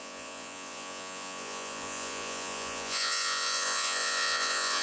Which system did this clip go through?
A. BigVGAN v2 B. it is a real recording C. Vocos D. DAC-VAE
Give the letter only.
C